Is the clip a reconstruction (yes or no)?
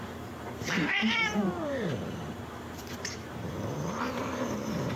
yes